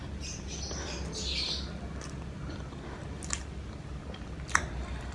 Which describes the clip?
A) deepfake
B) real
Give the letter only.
B